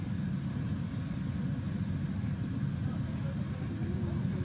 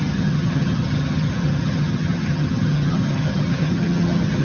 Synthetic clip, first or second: second